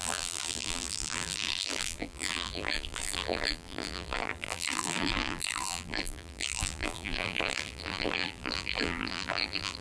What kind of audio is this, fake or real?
fake